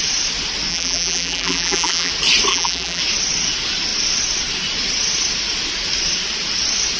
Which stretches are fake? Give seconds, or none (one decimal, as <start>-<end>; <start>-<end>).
0.7-2.1; 2.5-3.0